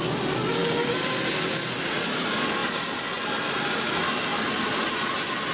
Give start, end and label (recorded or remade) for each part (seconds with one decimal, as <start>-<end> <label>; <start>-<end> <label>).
0.0-5.5 recorded